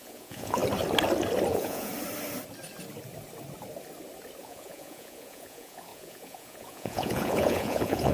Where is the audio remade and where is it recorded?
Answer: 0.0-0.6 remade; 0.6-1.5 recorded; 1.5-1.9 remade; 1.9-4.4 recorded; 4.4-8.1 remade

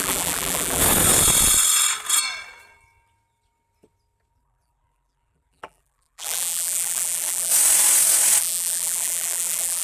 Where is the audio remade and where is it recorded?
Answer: 0.0-0.8 remade; 0.8-4.3 recorded; 4.3-7.5 remade; 7.5-8.4 recorded; 8.4-9.8 remade

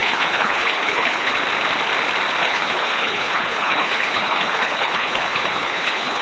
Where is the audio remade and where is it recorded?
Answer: 0.0-1.3 remade; 1.3-2.4 recorded; 2.4-6.2 remade

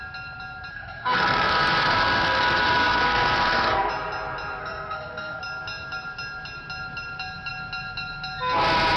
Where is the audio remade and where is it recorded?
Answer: 0.0-0.7 recorded; 0.7-3.9 remade; 3.9-4.6 recorded; 4.6-5.4 remade; 5.4-9.0 recorded

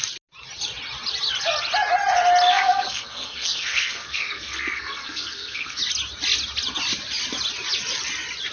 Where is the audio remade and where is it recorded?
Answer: 0.0-2.5 recorded; 2.5-5.8 remade; 5.8-8.5 recorded